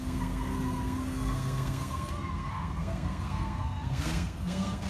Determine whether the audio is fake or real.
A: fake